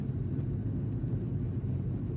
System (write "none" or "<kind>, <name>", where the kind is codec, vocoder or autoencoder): none